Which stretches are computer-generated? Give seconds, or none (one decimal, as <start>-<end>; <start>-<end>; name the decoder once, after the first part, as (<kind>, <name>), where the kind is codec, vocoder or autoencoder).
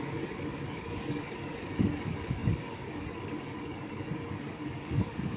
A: 0.0-5.4 (codec, DAC)